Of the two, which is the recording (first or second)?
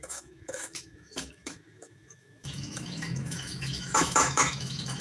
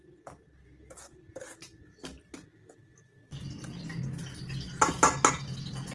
second